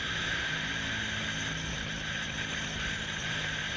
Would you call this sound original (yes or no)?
yes